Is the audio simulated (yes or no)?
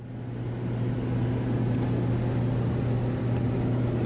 no